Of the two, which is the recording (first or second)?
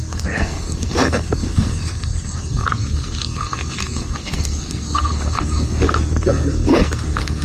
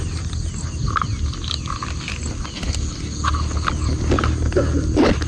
second